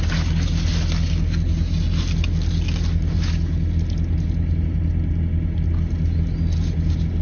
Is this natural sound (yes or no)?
yes